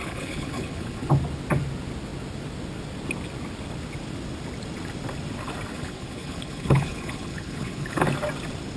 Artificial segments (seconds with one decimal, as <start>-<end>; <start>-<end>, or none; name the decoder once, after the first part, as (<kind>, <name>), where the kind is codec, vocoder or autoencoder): 0.0-1.1 (codec, HILCodec); 5.7-8.0